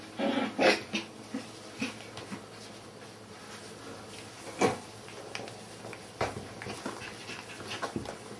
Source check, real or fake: real